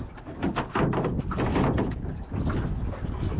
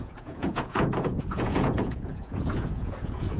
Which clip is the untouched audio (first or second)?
first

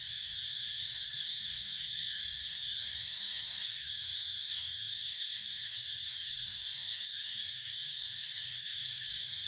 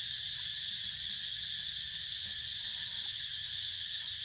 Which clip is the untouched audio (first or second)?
second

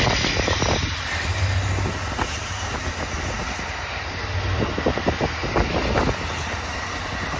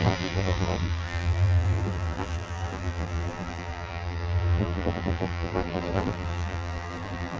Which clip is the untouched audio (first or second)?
first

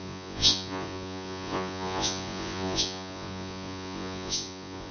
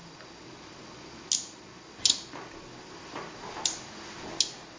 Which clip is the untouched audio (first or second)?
second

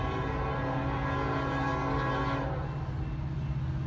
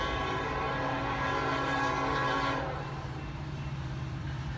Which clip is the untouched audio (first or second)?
first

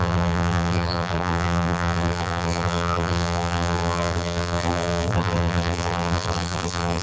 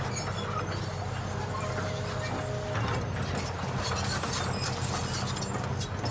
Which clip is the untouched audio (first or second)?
second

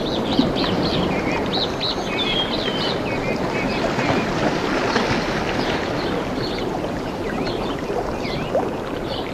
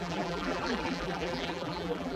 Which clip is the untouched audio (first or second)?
first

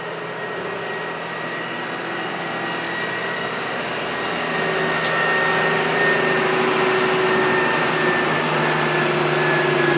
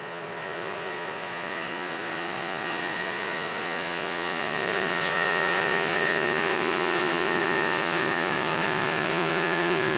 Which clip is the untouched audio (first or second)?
first